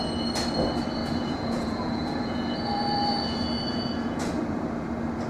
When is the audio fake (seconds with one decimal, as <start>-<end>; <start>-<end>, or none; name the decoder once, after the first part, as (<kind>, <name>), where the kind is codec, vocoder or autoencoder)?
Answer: 1.0-4.2 (vocoder, Vocos)